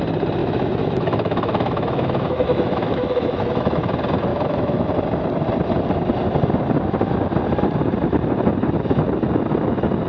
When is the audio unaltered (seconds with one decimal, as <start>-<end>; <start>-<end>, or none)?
0.0-0.4; 3.8-4.3; 4.9-10.1